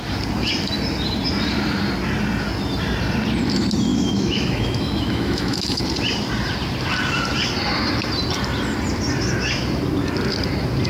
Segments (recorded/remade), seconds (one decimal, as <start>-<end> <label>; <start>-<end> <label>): 0.0-3.9 recorded; 3.9-5.8 remade; 5.8-10.9 recorded